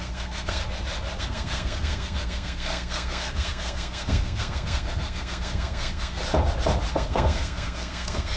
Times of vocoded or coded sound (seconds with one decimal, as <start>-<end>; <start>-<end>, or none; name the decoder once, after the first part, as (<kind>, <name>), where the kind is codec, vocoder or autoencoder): 0.0-0.6 (codec, SNAC); 1.2-6.2; 6.9-8.4